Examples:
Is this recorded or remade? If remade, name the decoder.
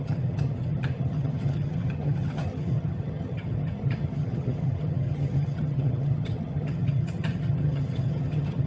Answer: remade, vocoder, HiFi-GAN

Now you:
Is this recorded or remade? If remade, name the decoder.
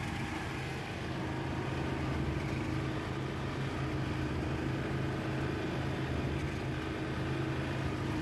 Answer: recorded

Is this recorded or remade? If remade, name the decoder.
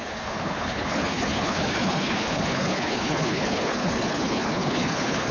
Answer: remade, codec, HILCodec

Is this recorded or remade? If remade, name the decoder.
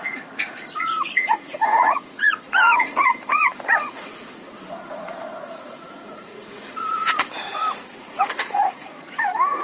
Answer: remade, vocoder, Vocos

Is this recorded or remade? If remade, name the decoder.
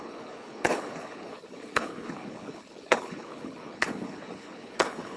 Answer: remade, codec, HILCodec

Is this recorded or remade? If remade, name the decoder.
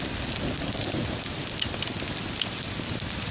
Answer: recorded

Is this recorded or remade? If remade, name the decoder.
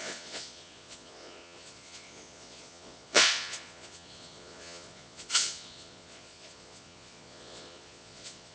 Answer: remade, vocoder, Vocos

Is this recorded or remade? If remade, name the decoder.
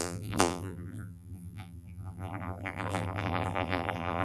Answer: remade, vocoder, BigVGAN v2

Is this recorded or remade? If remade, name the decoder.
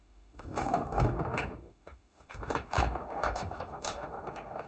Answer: remade, autoencoder, DAC-VAE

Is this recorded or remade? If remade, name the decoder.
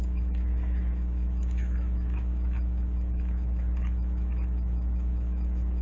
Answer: remade, autoencoder, DAC-VAE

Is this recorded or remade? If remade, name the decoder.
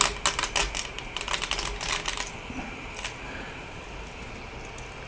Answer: recorded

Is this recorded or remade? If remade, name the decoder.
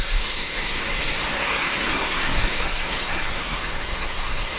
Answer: remade, codec, SNAC